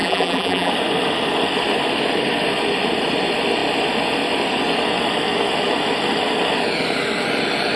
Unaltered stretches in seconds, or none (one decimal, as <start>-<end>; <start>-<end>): 0.7-7.8